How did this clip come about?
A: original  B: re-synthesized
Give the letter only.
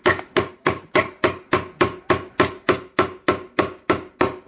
A